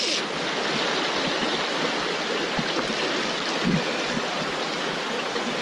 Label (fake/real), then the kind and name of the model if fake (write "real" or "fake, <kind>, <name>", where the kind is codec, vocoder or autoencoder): real